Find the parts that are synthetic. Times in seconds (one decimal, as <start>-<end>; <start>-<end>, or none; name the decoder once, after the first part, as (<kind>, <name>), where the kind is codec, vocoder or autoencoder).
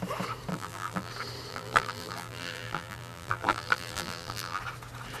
0.5-1.1 (vocoder, BigVGAN v2); 1.5-4.6